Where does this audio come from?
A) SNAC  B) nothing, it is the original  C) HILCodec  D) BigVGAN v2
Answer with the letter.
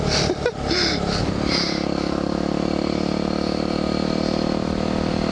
B